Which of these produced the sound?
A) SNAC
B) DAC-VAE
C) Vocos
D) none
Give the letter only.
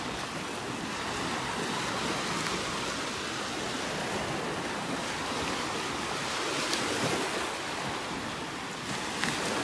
D